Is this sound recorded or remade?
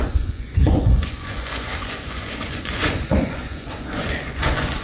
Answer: remade